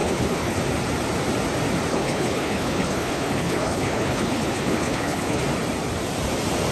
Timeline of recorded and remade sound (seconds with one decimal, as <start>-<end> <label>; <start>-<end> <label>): 0.0-0.6 remade; 0.6-1.9 recorded; 1.9-5.4 remade; 5.4-6.7 recorded